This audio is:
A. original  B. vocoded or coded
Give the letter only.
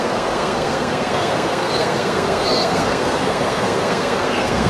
B